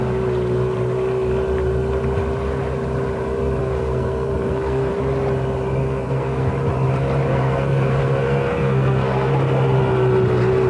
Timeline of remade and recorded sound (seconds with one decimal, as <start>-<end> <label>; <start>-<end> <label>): 0.0-3.6 recorded; 3.6-4.9 remade; 4.9-5.8 recorded; 5.8-6.5 remade; 6.5-7.3 recorded; 7.3-9.3 remade; 9.3-10.7 recorded